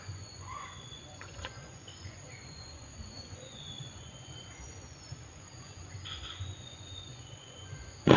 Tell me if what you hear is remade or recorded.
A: remade